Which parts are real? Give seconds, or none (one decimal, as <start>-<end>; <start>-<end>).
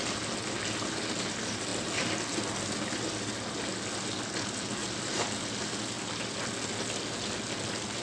0.0-4.8; 5.6-8.0